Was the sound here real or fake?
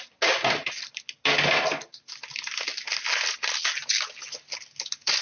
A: real